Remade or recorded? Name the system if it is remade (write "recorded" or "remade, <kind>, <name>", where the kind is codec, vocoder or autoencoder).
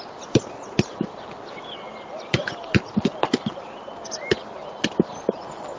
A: recorded